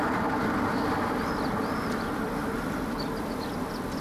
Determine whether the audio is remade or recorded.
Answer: remade